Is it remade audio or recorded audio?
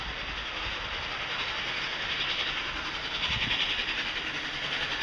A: recorded